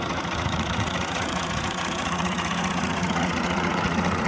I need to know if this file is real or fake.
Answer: fake